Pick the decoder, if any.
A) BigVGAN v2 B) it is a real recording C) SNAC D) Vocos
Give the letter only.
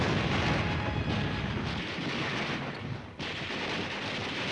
B